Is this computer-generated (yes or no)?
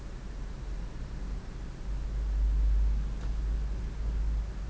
no